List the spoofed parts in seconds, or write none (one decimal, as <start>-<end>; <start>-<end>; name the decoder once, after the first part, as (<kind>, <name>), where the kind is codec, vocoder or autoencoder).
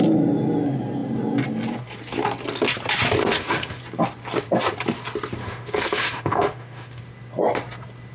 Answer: 3.2-3.8 (autoencoder, DAC-VAE); 5.4-7.0